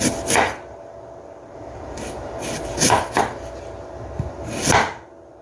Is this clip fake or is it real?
real